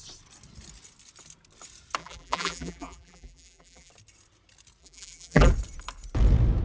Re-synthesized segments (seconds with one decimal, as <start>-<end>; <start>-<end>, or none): 2.0-3.9; 4.8-5.5